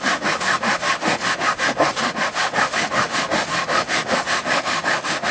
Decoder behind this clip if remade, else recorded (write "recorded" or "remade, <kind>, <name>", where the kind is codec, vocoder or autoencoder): remade, autoencoder, DAC-VAE